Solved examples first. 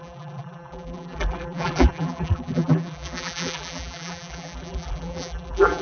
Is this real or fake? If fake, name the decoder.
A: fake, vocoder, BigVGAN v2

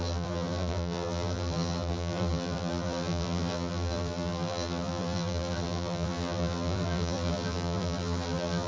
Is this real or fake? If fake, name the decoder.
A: fake, vocoder, BigVGAN v2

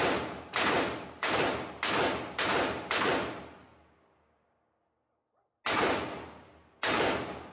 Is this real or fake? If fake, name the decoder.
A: real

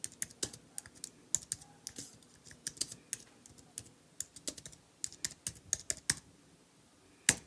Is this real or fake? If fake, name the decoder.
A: real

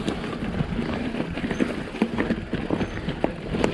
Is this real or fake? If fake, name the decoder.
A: real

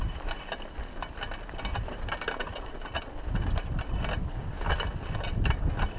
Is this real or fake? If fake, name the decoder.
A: real